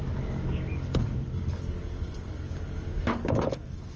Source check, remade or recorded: remade